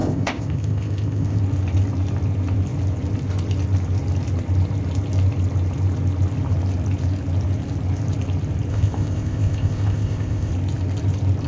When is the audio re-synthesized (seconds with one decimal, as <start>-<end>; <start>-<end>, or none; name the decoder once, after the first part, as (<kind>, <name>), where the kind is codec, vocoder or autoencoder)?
0.0-1.4 (codec, ZipCodec); 8.7-10.5